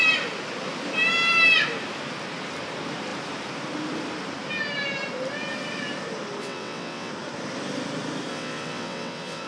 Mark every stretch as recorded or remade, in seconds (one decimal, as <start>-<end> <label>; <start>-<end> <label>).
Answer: 0.0-6.4 recorded; 6.4-7.1 remade; 7.1-8.3 recorded; 8.3-9.5 remade